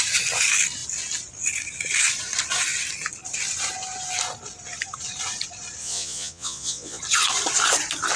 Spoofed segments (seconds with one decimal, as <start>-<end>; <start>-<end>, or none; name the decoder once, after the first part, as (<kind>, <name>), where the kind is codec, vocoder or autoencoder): 5.8-7.0 (vocoder, Vocos)